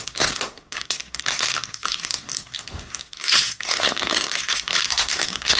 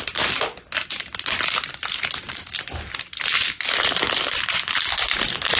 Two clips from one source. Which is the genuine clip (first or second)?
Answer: second